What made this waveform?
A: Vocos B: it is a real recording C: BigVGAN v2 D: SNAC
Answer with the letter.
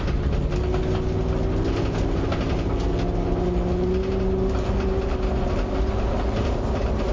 B